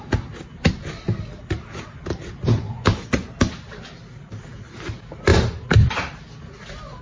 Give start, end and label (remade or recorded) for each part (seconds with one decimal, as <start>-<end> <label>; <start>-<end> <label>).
0.0-7.0 recorded